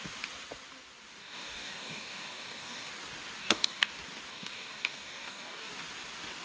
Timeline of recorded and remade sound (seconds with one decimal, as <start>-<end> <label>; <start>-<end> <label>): 0.0-1.2 recorded; 1.2-2.9 remade; 2.9-3.4 recorded; 3.4-3.9 remade; 3.9-4.3 recorded; 4.3-5.7 remade; 5.7-6.4 recorded